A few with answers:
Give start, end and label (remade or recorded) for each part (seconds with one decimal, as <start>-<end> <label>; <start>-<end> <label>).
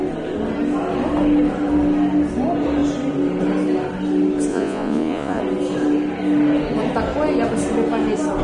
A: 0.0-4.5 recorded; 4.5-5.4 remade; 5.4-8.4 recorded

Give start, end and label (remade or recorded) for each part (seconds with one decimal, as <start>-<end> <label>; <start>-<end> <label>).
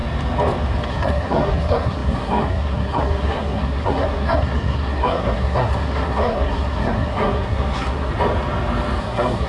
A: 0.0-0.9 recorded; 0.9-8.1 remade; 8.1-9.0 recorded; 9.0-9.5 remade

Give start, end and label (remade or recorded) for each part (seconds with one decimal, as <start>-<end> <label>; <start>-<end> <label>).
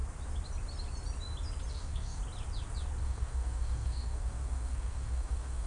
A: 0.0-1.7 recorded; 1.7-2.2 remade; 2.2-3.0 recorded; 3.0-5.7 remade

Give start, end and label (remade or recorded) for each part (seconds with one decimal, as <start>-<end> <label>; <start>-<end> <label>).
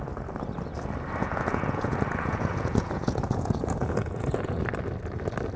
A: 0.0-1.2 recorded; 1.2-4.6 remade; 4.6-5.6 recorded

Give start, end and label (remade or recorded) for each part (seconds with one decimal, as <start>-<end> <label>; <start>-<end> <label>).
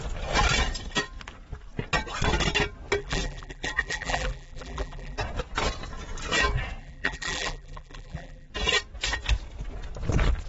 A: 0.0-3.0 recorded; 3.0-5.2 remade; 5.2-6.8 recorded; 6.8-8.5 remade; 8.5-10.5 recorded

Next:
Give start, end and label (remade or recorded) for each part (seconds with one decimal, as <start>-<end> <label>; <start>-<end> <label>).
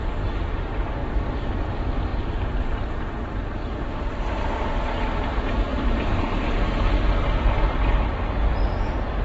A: 0.0-1.0 remade; 1.0-1.5 recorded; 1.5-9.2 remade